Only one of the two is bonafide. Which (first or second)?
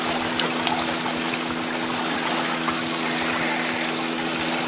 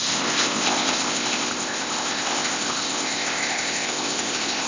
first